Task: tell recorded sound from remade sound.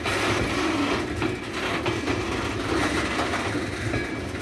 recorded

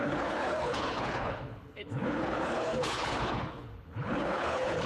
remade